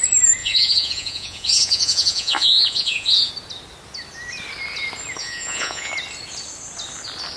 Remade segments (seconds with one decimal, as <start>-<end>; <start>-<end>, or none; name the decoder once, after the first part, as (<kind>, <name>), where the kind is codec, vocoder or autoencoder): 0.4-3.3 (vocoder, Vocos); 5.2-5.9